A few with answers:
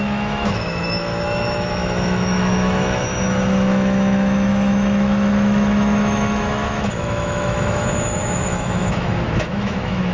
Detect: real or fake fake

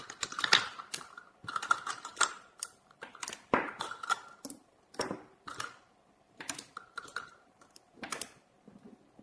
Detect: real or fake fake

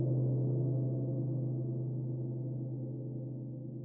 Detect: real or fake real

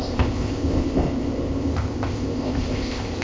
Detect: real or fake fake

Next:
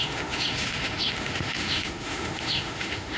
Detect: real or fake fake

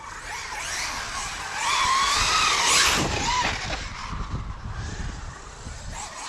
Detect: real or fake real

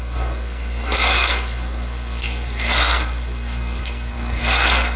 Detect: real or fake fake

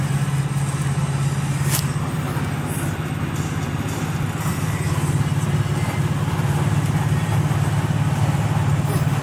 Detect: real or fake real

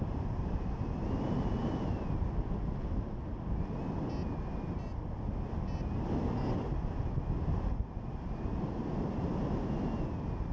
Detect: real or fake real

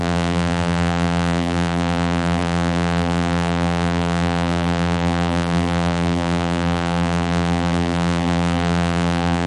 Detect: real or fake fake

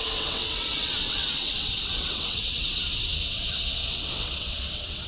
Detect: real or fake fake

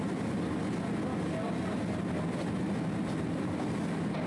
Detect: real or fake real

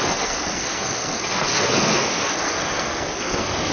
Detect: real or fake fake